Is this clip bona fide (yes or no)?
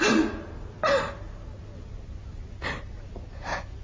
yes